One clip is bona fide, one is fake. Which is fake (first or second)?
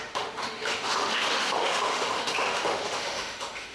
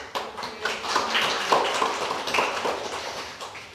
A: first